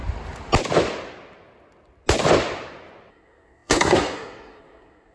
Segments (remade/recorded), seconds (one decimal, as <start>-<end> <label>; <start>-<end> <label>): 0.0-3.1 recorded; 3.1-5.1 remade